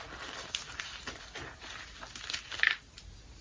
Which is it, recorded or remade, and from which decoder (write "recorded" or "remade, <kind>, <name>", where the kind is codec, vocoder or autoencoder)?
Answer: recorded